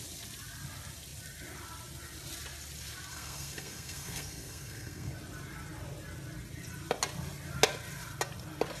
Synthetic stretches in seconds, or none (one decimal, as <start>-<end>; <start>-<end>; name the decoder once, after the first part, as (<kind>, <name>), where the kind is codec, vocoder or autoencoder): 3.1-5.1 (codec, SNAC)